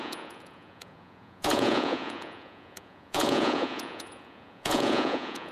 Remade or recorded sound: remade